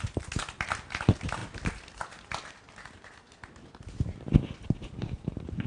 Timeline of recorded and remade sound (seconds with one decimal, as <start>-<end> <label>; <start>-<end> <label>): 0.0-5.7 recorded